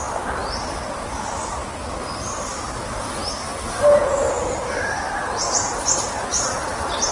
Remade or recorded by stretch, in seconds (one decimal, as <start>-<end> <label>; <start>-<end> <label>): 0.0-7.1 recorded

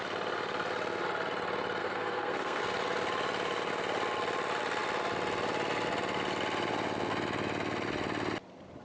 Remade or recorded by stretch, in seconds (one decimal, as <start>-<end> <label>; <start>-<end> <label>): 0.0-1.8 recorded; 1.8-2.6 remade; 2.6-8.8 recorded

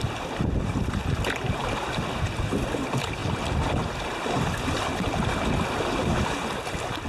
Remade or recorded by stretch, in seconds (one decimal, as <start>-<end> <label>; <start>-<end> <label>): 0.0-7.1 recorded

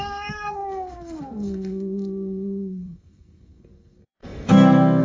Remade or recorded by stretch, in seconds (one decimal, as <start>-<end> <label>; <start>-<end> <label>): 0.0-5.0 remade

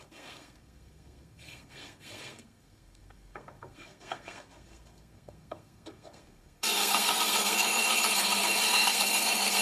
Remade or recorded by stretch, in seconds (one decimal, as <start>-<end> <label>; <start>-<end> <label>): 0.0-9.6 remade